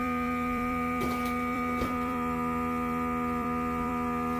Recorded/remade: remade